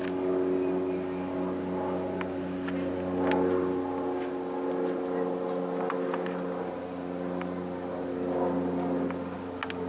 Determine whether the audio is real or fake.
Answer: real